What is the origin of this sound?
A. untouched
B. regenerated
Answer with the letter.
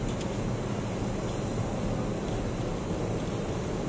A